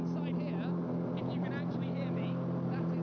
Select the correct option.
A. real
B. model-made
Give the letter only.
A